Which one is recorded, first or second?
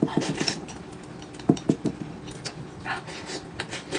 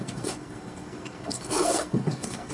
first